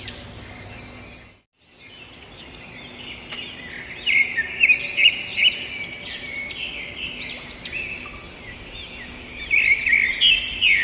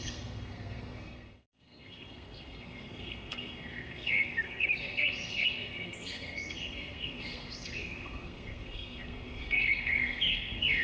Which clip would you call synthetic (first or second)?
second